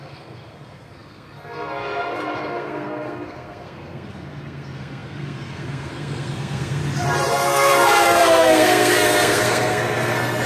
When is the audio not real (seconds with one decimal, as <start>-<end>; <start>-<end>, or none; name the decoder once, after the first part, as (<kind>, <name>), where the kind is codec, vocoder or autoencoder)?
0.0-6.8 (codec, SNAC); 7.3-10.5